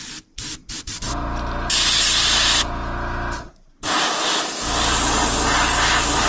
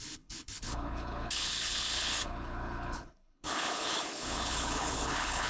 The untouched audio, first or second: first